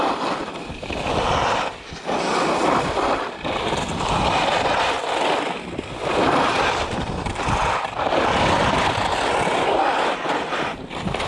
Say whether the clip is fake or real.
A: real